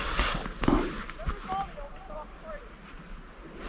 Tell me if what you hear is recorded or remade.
recorded